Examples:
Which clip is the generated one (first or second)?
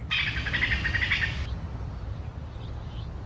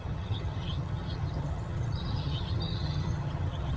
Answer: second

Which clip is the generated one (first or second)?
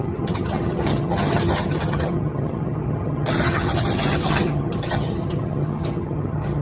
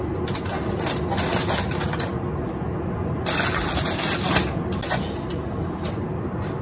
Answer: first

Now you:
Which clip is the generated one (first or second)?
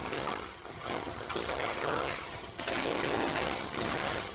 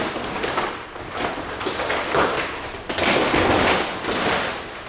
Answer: first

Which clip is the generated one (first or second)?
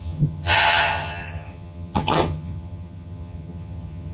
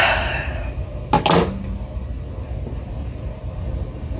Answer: first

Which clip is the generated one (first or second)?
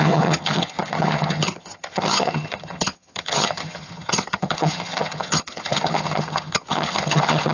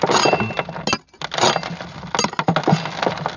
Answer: first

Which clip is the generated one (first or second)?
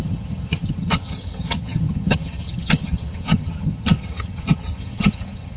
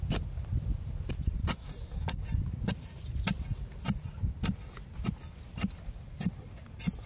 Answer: first